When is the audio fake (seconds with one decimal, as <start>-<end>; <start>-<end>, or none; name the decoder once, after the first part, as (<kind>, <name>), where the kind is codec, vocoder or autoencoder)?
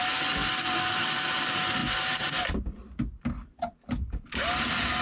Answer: none